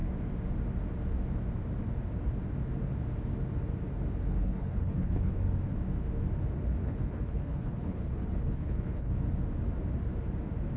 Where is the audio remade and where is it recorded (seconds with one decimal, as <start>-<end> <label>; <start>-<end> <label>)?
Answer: 0.0-4.4 recorded; 4.4-5.3 remade; 5.3-6.8 recorded; 6.8-9.1 remade; 9.1-10.8 recorded